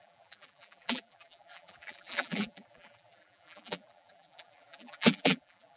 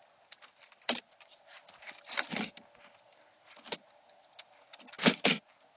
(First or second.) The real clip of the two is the second